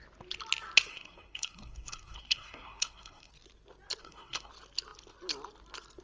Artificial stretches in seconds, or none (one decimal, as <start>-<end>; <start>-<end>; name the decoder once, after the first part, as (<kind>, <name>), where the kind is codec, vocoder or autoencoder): 0.9-3.3 (codec, SNAC); 4.0-4.5

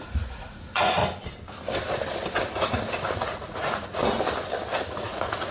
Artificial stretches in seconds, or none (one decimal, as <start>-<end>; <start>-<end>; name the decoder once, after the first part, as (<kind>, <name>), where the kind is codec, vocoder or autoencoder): 0.0-1.0 (vocoder, Vocos); 3.1-4.0; 4.8-5.5

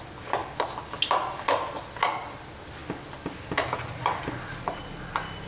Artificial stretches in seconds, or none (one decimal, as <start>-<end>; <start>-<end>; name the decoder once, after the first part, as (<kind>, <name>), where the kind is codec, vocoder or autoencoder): none